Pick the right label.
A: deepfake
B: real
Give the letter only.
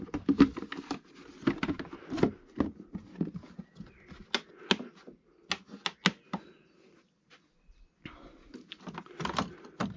B